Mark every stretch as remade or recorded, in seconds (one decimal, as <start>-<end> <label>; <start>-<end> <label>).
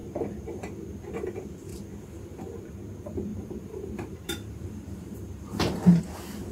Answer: 0.0-0.6 remade; 0.6-3.3 recorded; 3.3-6.0 remade; 6.0-6.5 recorded